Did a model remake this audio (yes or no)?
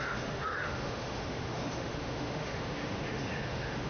yes